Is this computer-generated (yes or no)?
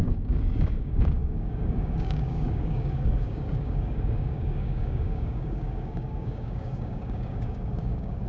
yes